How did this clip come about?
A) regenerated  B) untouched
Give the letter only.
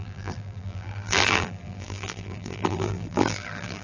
A